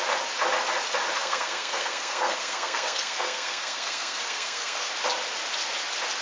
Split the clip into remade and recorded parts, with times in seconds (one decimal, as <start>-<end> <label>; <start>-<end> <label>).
0.0-1.2 recorded; 1.2-4.9 remade; 4.9-6.2 recorded